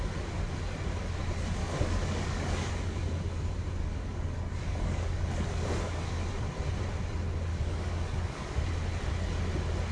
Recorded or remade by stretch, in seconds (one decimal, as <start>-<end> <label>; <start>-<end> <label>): 0.0-1.6 recorded; 1.6-2.7 remade; 2.7-3.8 recorded; 3.8-6.3 remade; 6.3-7.5 recorded; 7.5-8.7 remade; 8.7-9.9 recorded